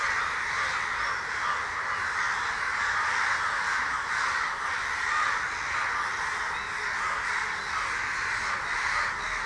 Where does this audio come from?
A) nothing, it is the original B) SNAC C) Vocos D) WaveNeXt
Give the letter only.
A